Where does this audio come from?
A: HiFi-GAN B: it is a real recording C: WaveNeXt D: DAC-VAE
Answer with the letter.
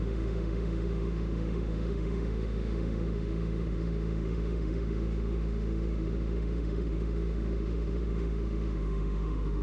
D